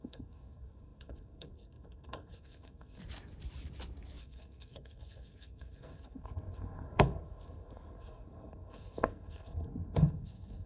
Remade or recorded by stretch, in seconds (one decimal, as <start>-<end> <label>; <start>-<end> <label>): 0.0-3.0 remade; 3.0-4.2 recorded; 4.2-10.7 remade

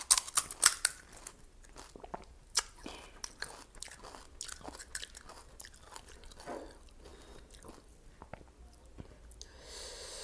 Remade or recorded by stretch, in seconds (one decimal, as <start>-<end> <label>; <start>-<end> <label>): 0.0-10.2 recorded

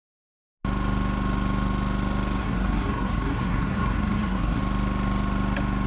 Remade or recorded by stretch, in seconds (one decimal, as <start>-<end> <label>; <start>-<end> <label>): 0.0-2.4 recorded; 2.4-4.6 remade; 4.6-5.9 recorded

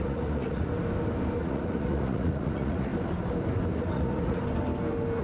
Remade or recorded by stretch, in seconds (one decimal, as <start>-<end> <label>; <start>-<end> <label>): 0.0-0.7 remade; 0.7-1.4 recorded; 1.4-2.9 remade; 2.9-3.8 recorded; 3.8-4.4 remade; 4.4-5.2 recorded